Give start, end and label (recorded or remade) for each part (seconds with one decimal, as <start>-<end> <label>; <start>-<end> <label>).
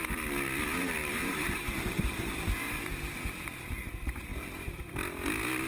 0.0-1.0 recorded; 1.0-2.4 remade; 2.4-4.3 recorded; 4.3-4.8 remade; 4.8-5.7 recorded